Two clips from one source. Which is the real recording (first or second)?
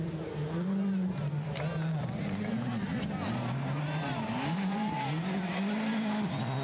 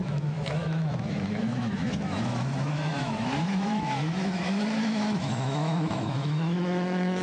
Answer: first